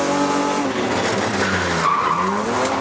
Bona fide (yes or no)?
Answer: yes